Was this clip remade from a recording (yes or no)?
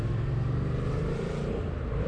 no